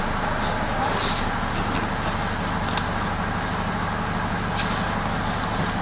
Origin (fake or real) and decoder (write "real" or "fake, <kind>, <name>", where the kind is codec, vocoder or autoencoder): real